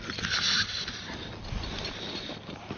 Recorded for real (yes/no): yes